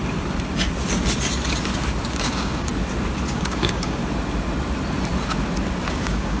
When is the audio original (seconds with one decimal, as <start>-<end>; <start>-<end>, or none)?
0.0-2.1; 2.7-3.3; 4.0-5.9

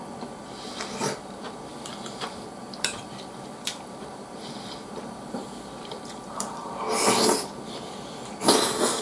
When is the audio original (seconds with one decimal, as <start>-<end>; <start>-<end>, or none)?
0.0-1.7; 6.7-9.0